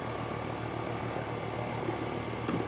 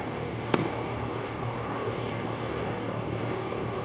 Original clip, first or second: first